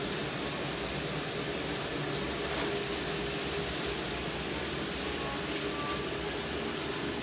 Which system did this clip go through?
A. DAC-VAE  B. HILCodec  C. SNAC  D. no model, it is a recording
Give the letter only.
D